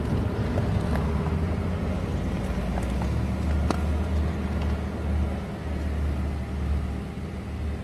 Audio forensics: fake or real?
real